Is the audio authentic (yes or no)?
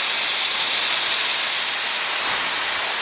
yes